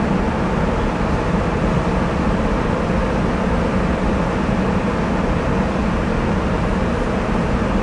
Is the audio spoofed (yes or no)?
no